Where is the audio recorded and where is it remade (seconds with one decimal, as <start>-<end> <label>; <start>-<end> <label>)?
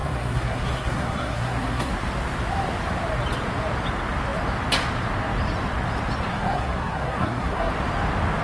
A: 0.0-1.9 remade; 1.9-6.3 recorded; 6.3-7.7 remade; 7.7-8.4 recorded